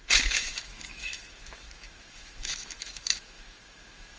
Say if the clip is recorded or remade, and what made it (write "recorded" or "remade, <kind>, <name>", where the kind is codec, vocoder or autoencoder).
remade, autoencoder, DAC-VAE